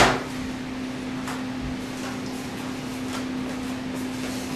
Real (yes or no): yes